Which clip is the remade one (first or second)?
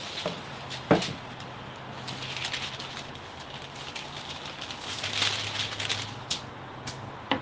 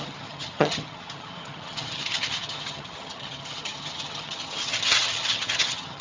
second